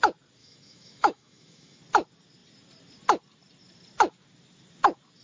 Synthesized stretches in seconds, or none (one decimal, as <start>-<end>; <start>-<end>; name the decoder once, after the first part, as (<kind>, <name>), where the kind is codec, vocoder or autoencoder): 0.4-1.8 (autoencoder, DAC-VAE)